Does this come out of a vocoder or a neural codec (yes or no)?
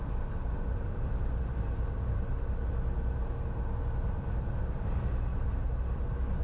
no